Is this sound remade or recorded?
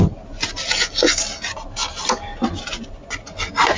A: recorded